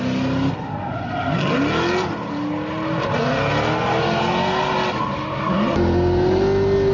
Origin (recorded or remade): recorded